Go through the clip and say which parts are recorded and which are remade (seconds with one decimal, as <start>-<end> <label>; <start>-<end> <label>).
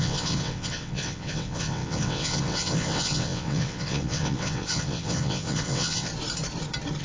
0.0-6.1 remade; 6.1-7.0 recorded